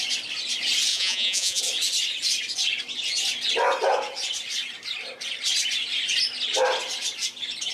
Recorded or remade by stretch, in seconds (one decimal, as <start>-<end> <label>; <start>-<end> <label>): 0.0-0.9 recorded; 0.9-1.6 remade; 1.6-7.7 recorded

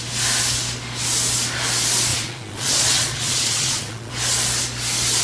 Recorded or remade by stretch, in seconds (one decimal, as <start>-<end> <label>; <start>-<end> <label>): 0.0-2.1 recorded; 2.1-4.1 remade; 4.1-5.2 recorded

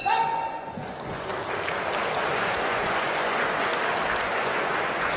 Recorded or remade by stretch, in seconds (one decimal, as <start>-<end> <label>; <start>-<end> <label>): 0.0-1.3 remade; 1.3-2.1 recorded; 2.1-3.7 remade; 3.7-4.3 recorded; 4.3-5.2 remade

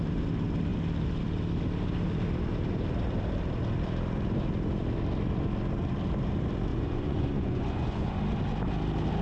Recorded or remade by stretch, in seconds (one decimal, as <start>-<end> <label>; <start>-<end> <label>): 0.0-6.7 recorded; 6.7-8.2 remade; 8.2-9.2 recorded

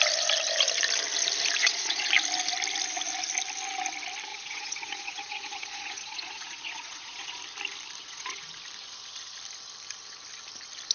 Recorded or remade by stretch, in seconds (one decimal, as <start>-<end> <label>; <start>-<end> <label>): 0.0-1.6 recorded; 1.6-2.1 remade; 2.1-4.3 recorded; 4.3-7.4 remade; 7.4-8.0 recorded; 8.0-8.5 remade; 8.5-10.9 recorded